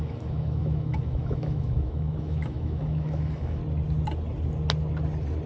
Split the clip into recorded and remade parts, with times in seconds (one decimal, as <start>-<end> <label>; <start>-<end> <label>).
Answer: 0.0-3.6 remade; 3.6-5.5 recorded